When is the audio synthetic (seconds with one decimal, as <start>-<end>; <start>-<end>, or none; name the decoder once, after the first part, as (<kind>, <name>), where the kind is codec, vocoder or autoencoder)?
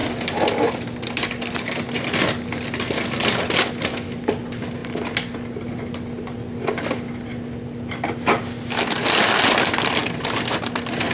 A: none